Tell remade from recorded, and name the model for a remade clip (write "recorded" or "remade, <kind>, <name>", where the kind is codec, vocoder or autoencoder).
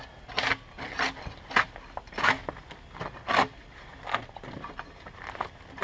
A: recorded